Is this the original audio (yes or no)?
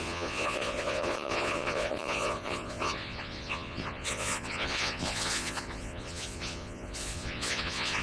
no